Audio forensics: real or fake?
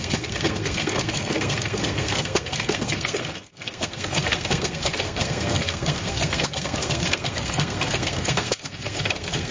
fake